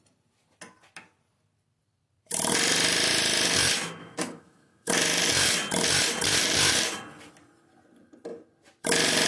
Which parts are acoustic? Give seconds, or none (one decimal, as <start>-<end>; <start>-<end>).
0.0-4.0; 4.9-9.3